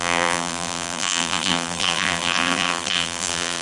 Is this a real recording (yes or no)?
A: no